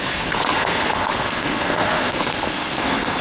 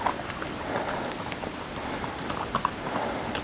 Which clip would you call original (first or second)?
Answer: second